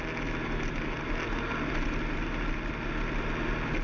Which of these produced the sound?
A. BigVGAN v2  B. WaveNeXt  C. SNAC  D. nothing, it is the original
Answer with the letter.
D